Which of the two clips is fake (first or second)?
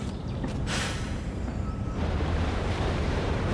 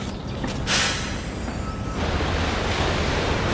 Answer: first